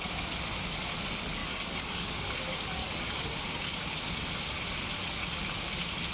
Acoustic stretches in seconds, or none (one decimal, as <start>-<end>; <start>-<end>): 0.0-1.4; 2.3-2.8; 3.6-6.1

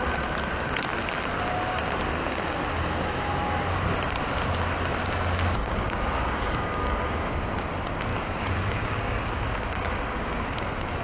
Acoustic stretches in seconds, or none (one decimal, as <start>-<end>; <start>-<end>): 0.0-5.6; 7.3-8.1

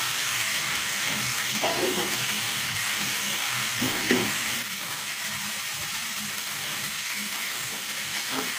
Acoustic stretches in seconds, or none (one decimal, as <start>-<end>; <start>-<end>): 5.2-6.3

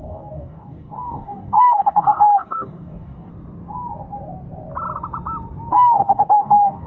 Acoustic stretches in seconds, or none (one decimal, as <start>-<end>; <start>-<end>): 3.3-5.7